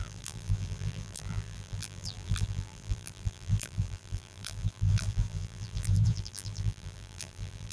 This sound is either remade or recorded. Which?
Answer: remade